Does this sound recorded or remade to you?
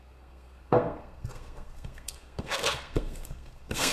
remade